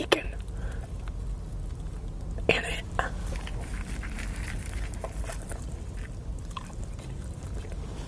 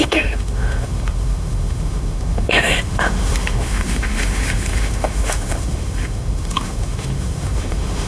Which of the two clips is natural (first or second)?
first